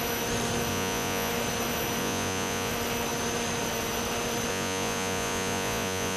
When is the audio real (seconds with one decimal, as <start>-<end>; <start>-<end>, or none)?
0.0-0.7; 1.3-2.0; 2.7-4.5